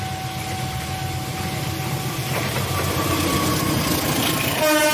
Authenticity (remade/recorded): recorded